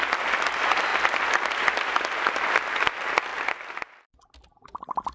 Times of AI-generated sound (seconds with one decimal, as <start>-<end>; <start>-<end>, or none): 3.3-4.0